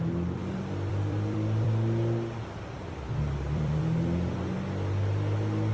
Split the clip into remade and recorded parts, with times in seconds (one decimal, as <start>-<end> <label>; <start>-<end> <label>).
0.0-0.4 recorded; 0.4-3.8 remade; 3.8-5.7 recorded